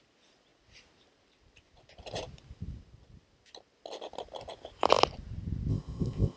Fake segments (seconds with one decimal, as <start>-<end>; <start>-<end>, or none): 5.7-6.4